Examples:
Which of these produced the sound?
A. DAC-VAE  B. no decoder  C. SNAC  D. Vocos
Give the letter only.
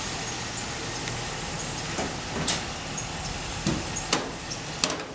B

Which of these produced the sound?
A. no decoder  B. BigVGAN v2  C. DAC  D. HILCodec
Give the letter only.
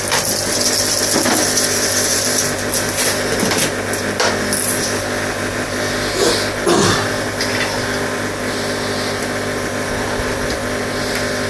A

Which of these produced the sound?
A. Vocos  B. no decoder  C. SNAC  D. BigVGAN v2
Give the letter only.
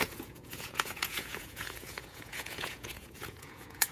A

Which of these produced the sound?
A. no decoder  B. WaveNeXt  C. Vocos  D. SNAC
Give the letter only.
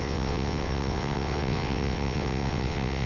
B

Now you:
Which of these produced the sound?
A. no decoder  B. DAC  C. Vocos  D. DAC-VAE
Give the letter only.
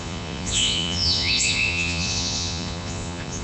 C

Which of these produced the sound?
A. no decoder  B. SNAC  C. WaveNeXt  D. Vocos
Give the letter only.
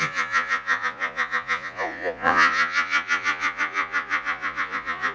D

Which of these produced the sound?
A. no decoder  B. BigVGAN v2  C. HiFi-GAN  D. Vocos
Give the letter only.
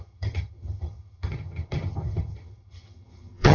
C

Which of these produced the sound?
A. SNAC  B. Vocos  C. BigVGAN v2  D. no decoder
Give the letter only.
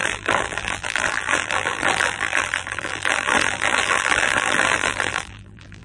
C